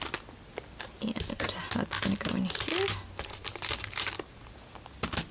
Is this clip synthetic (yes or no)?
no